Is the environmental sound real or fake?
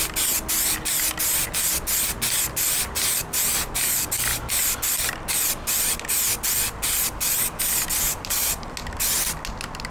real